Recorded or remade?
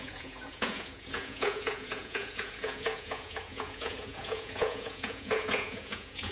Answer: remade